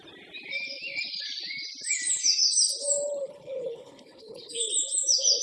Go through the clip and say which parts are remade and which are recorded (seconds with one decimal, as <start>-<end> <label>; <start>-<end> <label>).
0.0-3.2 recorded; 3.2-4.7 remade; 4.7-5.4 recorded